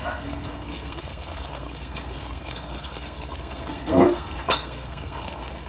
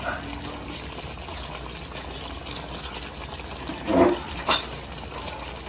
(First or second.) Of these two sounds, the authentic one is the second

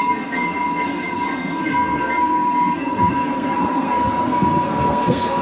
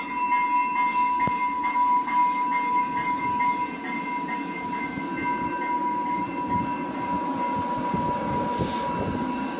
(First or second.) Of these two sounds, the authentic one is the second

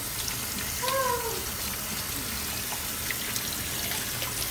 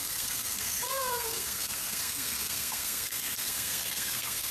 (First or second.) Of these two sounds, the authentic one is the first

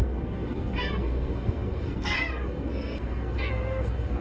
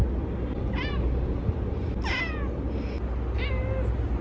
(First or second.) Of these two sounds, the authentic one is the second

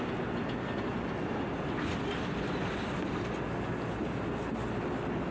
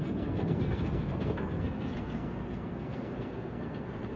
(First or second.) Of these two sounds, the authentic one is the first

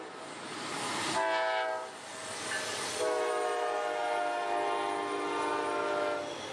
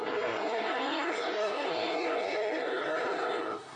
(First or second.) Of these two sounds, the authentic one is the first